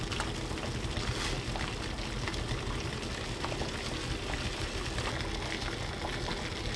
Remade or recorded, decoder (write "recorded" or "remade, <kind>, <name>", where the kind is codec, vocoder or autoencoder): recorded